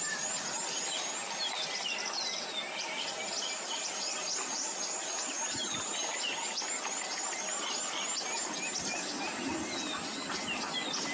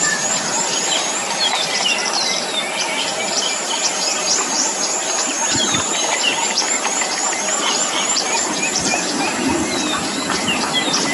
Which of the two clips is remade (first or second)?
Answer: second